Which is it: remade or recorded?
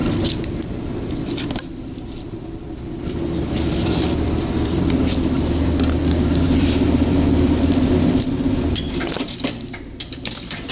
remade